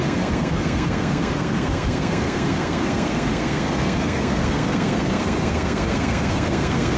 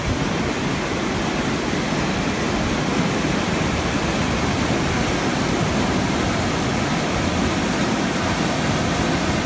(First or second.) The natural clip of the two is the second